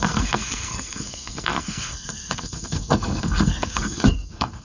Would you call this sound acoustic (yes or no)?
no